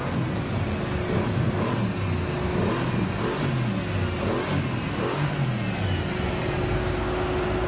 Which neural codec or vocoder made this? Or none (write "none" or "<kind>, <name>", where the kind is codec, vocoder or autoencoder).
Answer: none